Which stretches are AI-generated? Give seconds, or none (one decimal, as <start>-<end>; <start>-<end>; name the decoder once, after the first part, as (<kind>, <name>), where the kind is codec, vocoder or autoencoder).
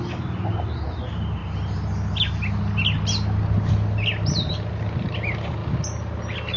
none